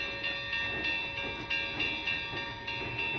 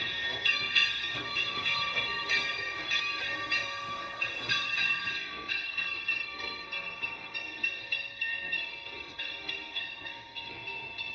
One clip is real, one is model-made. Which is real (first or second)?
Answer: first